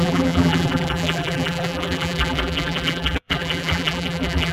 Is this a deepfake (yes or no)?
yes